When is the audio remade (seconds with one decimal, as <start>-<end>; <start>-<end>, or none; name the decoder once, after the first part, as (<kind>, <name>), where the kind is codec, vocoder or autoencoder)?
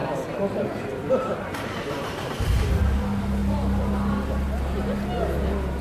0.0-3.0 (vocoder, BigVGAN v2)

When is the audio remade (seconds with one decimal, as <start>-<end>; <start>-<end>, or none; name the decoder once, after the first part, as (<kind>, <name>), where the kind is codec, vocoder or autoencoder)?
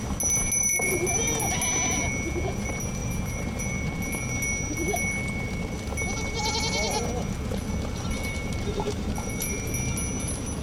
3.0-3.6 (vocoder, BigVGAN v2); 8.4-9.7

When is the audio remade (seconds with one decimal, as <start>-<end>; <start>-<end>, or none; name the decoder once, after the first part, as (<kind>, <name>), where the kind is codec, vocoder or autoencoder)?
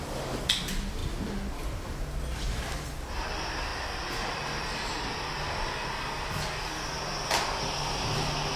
none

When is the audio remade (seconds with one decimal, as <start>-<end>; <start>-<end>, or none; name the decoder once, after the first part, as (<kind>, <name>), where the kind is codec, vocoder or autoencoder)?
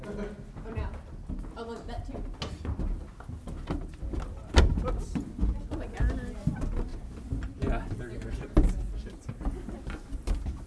6.9-8.3 (vocoder, BigVGAN v2)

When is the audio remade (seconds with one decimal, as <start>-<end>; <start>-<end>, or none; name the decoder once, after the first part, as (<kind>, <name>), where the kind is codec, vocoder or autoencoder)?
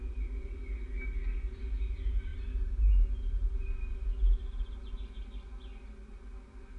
none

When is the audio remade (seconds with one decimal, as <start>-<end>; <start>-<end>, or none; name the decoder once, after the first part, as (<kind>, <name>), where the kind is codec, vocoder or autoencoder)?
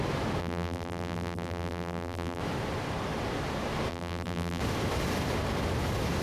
0.4-2.4 (vocoder, BigVGAN v2); 3.9-4.6